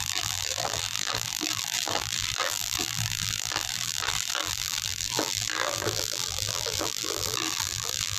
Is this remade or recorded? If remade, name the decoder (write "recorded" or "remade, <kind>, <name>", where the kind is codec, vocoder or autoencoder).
remade, vocoder, BigVGAN v2